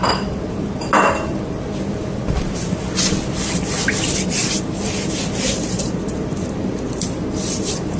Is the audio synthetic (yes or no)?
yes